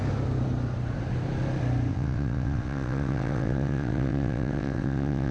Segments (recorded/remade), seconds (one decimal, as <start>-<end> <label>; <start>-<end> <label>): 0.0-1.9 recorded; 1.9-5.3 remade